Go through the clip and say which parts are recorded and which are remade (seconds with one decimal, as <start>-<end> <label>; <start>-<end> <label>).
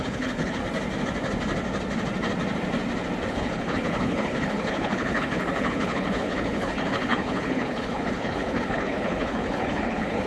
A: 0.0-0.6 remade; 0.6-3.3 recorded; 3.3-10.3 remade